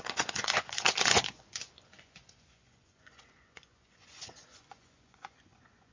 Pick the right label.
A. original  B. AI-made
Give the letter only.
B